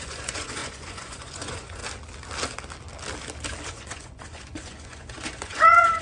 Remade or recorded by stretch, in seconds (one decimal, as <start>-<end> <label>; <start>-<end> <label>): 0.0-1.8 remade; 1.8-3.6 recorded; 3.6-6.0 remade